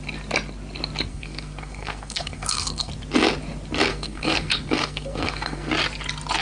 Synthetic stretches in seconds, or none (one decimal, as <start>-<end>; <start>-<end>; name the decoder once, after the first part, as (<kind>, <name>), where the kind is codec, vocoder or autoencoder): 1.1-2.9 (codec, SNAC); 3.9-5.7